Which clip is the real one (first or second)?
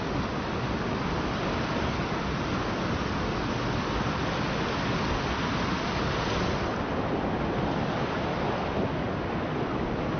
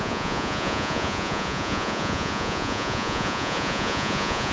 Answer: first